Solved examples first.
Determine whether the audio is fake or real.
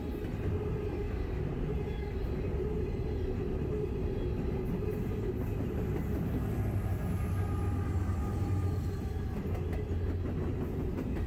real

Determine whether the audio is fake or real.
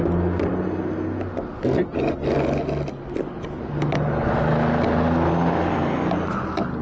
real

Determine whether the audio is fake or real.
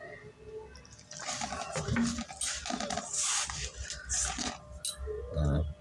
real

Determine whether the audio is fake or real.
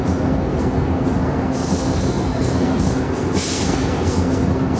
fake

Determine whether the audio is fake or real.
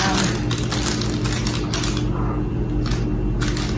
real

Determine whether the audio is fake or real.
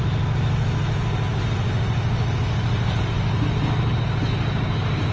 real